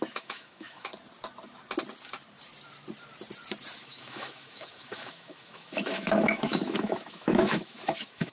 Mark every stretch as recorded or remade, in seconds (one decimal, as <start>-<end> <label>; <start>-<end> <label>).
0.0-0.9 remade; 0.9-3.8 recorded; 3.8-8.3 remade